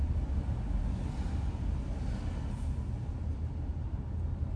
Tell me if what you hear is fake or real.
real